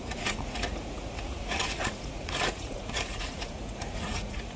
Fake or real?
fake